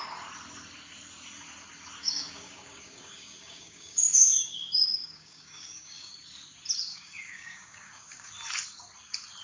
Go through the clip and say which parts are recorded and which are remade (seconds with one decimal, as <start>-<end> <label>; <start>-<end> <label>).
0.0-2.0 recorded; 2.0-6.1 remade; 6.1-6.9 recorded; 6.9-8.3 remade; 8.3-9.4 recorded